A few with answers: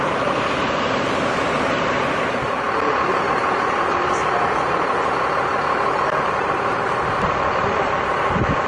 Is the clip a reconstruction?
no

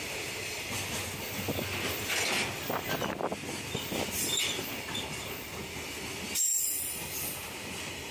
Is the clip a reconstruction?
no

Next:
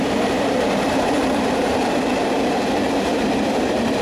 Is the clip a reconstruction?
yes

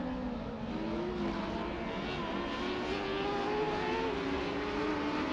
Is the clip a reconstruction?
no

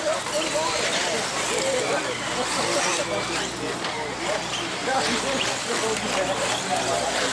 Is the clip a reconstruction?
no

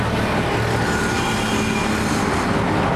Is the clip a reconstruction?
no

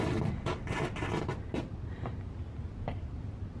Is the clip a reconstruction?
no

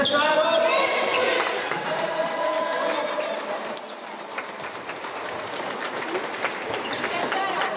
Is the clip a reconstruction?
yes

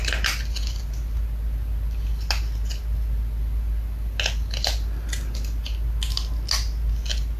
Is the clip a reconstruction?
no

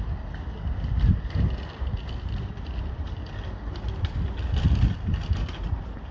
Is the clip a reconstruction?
no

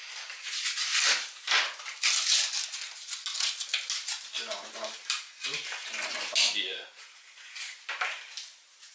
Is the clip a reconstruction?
no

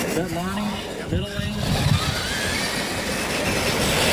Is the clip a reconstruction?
no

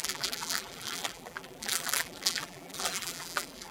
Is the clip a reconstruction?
yes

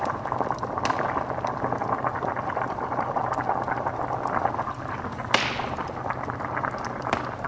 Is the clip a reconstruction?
no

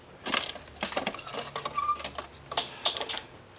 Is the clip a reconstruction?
no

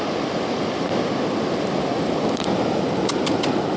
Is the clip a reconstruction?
yes